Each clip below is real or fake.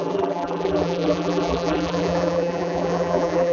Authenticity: fake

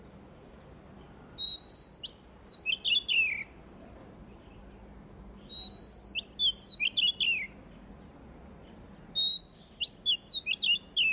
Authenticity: real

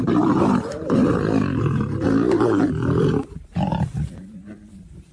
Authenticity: fake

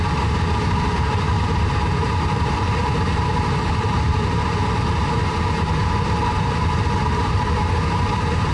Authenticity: fake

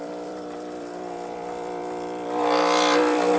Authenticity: fake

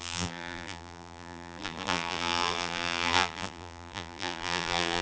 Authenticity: fake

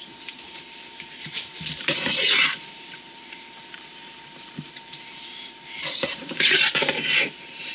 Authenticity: fake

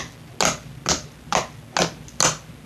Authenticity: real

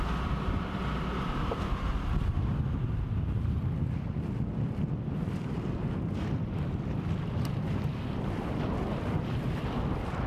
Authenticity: real